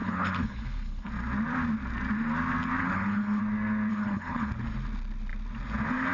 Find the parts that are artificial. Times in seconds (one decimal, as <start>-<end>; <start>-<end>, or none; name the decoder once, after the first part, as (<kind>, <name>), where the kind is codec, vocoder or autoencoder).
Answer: 0.0-1.1 (codec, HILCodec); 2.8-3.4; 3.9-4.5